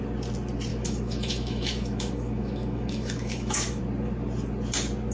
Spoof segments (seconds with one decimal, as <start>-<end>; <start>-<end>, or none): 0.7-3.8